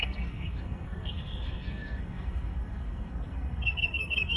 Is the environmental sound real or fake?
fake